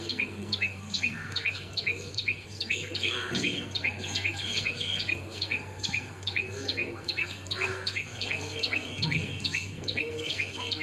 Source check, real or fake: fake